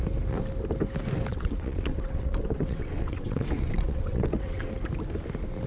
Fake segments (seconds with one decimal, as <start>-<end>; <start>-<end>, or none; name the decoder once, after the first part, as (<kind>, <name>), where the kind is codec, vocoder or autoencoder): 1.3-4.7 (vocoder, WaveNeXt)